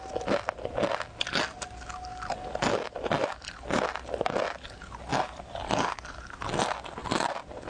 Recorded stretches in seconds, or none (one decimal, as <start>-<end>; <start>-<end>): 0.0-7.7